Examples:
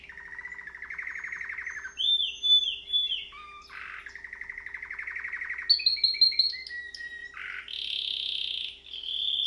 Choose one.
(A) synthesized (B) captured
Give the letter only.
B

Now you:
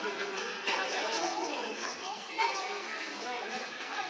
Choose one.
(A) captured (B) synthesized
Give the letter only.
B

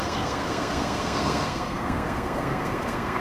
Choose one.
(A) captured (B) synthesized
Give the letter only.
B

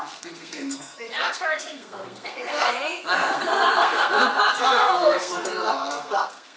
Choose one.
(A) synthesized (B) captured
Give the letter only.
A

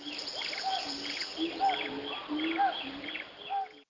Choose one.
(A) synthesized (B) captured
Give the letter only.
B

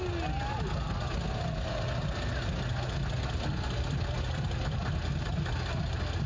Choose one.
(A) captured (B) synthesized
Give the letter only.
A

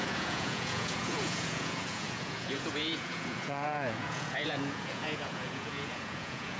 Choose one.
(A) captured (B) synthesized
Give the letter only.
B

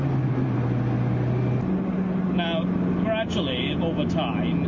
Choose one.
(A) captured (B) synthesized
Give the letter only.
A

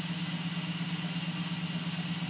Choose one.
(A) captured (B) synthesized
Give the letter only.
A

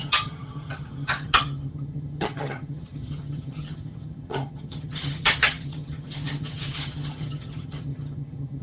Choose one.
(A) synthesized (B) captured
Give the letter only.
A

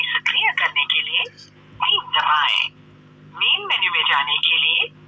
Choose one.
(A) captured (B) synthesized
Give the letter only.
A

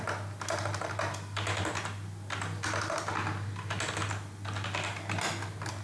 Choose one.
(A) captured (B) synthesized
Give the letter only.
A